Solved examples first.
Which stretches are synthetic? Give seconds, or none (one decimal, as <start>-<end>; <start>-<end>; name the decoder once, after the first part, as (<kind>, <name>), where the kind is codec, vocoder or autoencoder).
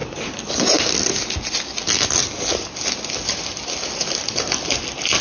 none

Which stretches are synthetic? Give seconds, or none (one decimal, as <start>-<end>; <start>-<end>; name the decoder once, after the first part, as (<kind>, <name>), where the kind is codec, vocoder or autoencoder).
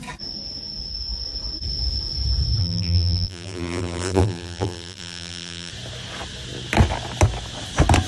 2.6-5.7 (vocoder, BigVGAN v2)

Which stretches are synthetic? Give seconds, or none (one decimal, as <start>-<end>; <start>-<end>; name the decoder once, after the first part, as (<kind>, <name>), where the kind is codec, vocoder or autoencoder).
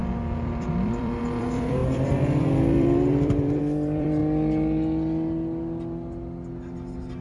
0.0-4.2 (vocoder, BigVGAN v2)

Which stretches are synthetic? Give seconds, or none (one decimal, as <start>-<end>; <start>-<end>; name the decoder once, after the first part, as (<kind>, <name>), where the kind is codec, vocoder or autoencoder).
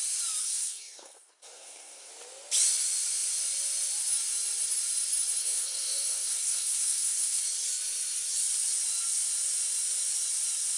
0.4-2.1 (codec, SNAC); 5.4-7.4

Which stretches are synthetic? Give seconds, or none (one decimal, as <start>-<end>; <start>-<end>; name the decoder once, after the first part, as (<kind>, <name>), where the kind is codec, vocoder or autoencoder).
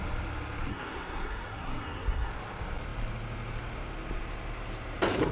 0.7-2.3 (codec, SNAC)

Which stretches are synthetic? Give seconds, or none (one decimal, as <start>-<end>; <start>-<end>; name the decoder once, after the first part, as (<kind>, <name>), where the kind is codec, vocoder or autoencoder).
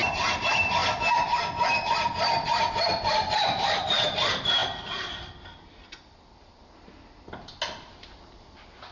0.0-0.8 (vocoder, BigVGAN v2); 3.1-4.6; 7.7-8.9